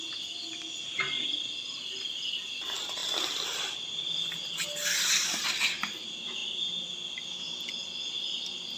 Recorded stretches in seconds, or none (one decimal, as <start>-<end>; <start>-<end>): 0.0-8.8